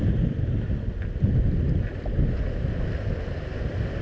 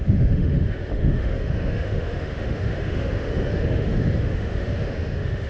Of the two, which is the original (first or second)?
first